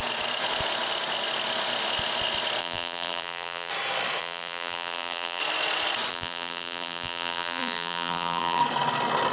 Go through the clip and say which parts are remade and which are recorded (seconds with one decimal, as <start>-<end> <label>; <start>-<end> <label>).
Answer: 0.0-2.6 recorded; 2.6-3.7 remade; 3.7-4.2 recorded; 4.2-5.4 remade; 5.4-6.1 recorded; 6.1-8.6 remade; 8.6-9.3 recorded